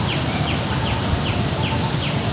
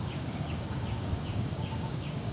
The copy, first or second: second